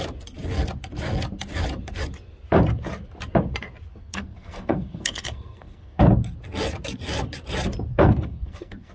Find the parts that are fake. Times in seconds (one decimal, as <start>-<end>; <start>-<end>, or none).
3.9-6.0; 7.9-8.9